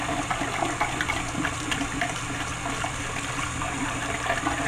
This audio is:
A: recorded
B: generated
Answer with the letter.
A